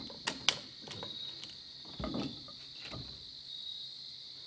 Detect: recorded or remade recorded